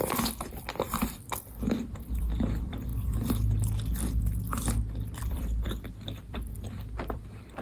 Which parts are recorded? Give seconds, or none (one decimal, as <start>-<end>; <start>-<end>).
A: 2.9-5.2